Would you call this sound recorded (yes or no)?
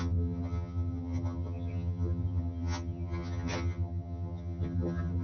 no